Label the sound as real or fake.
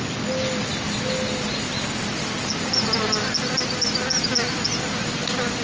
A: real